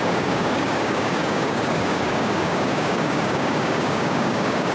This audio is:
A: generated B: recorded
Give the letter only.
A